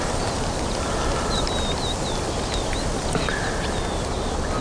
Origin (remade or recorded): recorded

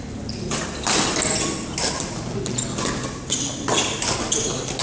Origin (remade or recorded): recorded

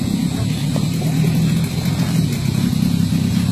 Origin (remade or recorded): recorded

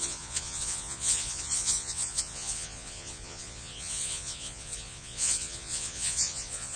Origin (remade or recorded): remade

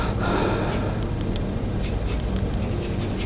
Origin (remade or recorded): recorded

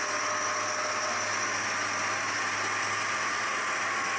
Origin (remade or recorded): recorded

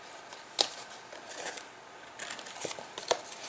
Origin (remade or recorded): recorded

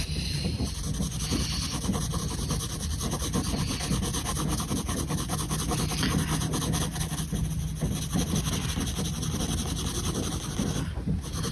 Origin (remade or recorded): recorded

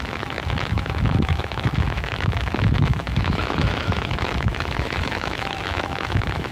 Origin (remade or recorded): remade